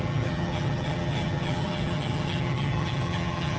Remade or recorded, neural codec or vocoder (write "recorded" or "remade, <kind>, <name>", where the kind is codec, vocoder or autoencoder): remade, vocoder, HiFi-GAN